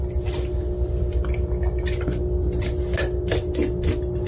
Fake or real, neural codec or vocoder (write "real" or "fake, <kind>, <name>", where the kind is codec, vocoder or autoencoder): real